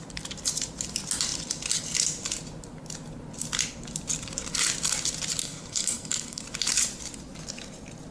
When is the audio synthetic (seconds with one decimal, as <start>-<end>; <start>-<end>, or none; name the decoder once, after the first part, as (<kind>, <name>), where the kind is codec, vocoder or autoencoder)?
5.4-6.4 (codec, SNAC)